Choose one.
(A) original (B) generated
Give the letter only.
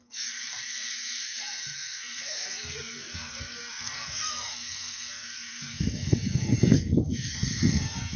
B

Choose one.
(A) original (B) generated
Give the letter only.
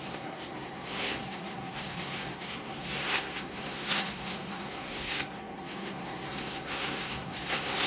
B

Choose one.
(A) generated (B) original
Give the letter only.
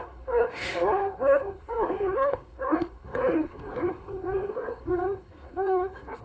A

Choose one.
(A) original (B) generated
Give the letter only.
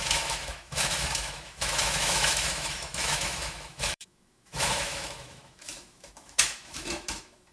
B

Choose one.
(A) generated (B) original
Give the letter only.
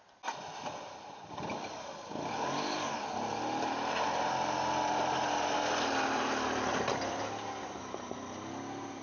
B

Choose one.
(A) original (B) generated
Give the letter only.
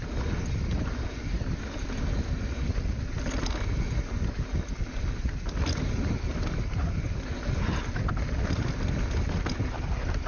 A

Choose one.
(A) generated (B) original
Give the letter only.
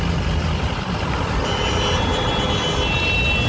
B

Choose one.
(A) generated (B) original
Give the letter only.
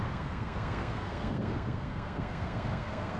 A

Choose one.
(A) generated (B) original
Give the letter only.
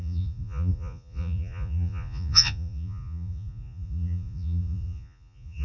A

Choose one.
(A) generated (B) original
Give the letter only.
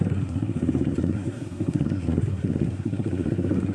A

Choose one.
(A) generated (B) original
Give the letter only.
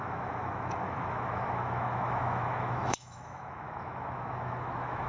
A